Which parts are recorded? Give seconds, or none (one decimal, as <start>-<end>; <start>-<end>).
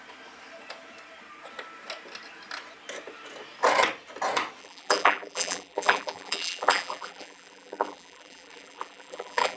0.0-4.6